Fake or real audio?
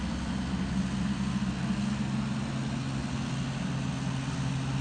real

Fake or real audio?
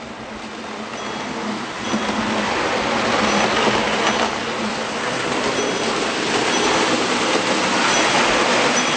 real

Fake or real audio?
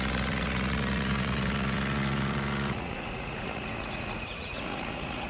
fake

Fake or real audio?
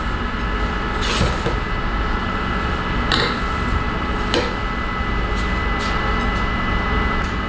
real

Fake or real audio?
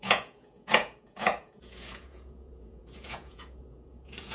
fake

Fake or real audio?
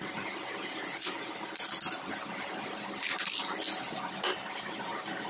real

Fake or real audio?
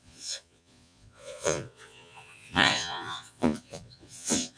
fake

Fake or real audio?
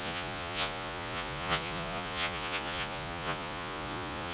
fake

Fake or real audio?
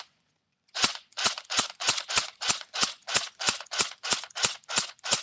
fake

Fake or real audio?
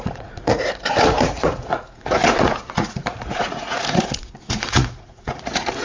fake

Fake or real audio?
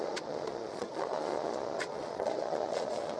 fake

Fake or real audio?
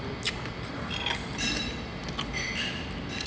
real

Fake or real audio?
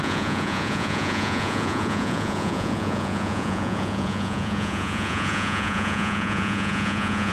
fake